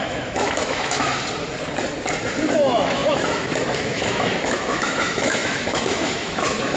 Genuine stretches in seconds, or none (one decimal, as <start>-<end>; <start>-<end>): 1.1-2.5